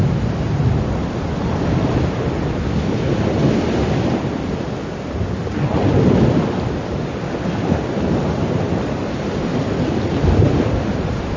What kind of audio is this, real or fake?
real